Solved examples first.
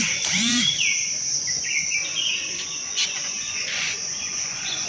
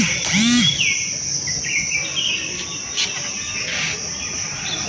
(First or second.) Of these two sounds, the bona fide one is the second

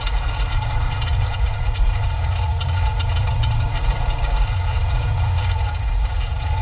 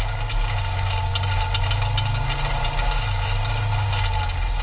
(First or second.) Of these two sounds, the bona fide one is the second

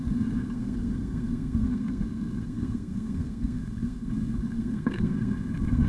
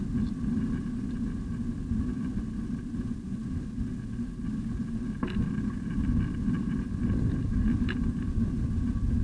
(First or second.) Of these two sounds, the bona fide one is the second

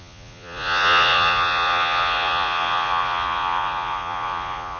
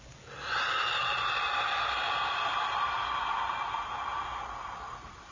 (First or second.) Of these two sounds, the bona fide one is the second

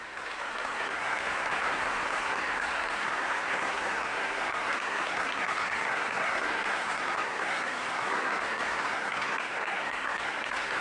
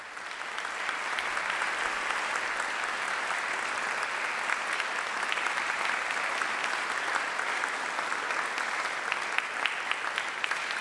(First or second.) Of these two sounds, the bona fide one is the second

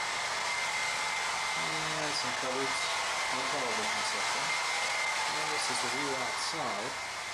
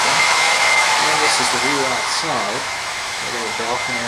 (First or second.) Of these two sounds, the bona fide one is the first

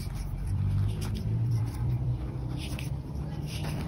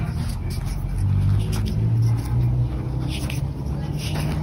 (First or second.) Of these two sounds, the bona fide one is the second